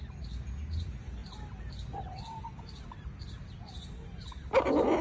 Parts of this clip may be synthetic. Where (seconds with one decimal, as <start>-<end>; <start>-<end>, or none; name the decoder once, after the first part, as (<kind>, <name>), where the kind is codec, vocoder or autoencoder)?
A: none